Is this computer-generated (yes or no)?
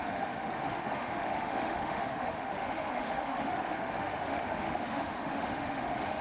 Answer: yes